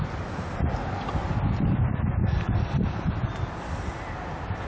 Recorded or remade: recorded